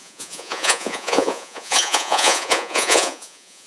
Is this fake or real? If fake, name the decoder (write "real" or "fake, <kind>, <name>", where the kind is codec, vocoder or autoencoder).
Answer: fake, vocoder, Vocos